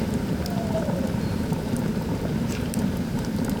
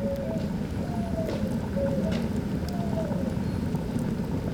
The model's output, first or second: first